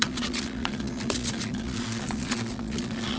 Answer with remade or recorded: remade